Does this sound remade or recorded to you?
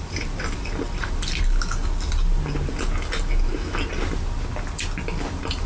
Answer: recorded